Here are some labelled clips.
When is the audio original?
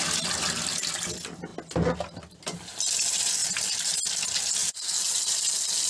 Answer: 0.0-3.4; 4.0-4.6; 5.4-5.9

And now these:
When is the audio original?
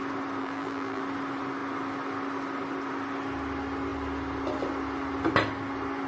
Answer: 0.0-0.4; 1.0-6.1